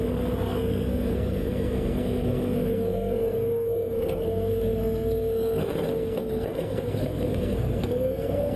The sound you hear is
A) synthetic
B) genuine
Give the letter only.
A